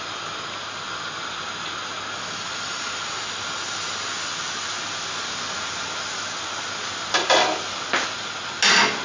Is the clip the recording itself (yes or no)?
yes